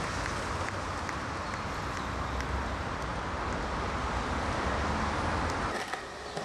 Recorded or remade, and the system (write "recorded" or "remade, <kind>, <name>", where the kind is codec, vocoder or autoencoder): recorded